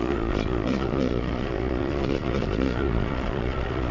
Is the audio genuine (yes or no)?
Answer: no